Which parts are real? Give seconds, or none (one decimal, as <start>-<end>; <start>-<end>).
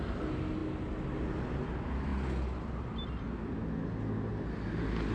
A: 0.0-5.1